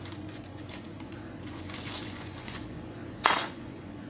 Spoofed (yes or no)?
yes